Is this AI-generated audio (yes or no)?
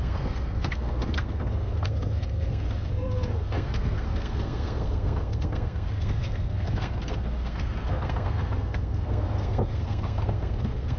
yes